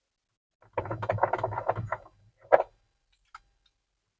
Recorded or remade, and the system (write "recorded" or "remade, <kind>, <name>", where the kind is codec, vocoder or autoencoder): recorded